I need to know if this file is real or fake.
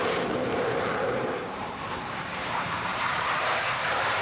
fake